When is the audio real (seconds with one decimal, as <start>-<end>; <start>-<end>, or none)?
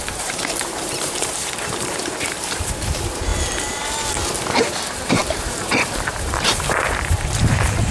3.3-4.6